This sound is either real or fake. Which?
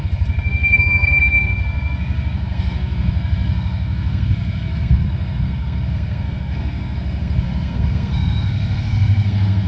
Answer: fake